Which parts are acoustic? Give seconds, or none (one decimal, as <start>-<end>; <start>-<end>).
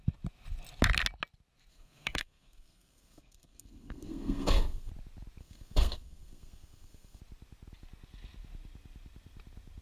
0.0-1.7; 4.9-5.4; 7.2-9.8